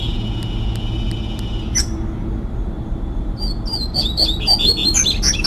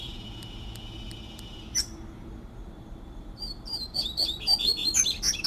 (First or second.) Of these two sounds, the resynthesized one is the second